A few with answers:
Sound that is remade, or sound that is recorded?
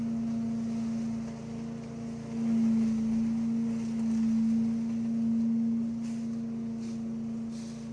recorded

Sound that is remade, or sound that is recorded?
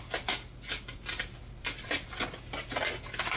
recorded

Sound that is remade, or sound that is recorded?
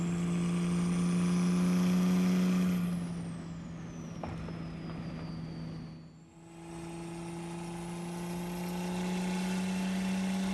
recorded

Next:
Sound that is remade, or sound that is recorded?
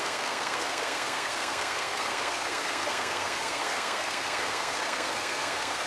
remade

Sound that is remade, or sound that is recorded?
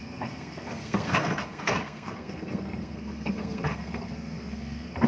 remade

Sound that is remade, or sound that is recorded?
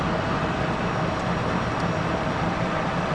recorded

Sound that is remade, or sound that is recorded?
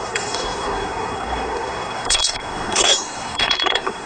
remade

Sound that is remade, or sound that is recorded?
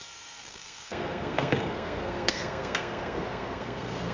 remade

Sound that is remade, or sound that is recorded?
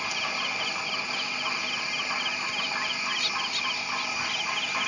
recorded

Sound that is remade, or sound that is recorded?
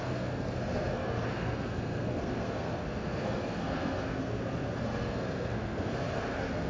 remade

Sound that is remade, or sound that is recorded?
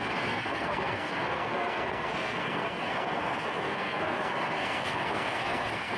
remade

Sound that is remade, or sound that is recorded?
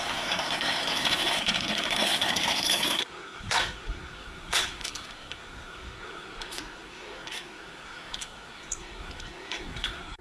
remade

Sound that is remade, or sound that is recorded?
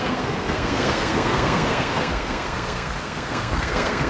remade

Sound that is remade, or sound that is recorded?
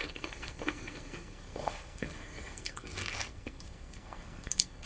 remade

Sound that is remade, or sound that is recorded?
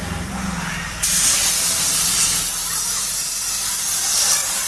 recorded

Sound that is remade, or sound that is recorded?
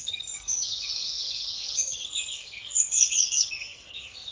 remade